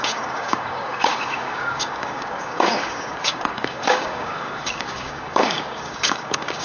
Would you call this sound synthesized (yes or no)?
yes